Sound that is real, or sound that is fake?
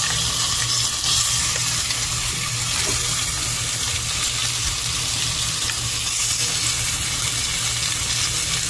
real